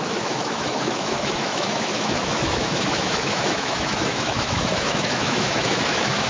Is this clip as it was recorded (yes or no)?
no